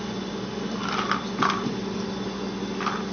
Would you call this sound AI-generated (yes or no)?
no